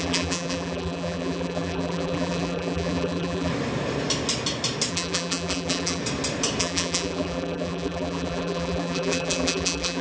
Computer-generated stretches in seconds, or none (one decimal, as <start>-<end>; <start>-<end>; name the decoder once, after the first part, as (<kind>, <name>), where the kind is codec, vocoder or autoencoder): 0.0-3.5 (vocoder, BigVGAN v2); 4.9-6.0; 6.6-10.0